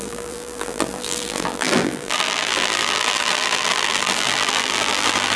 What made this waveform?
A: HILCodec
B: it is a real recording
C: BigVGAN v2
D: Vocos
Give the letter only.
C